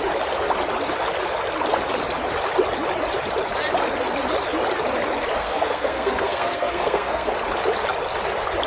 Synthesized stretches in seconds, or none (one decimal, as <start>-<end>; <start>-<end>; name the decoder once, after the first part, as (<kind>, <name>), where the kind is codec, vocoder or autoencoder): 5.4-7.3 (codec, SNAC)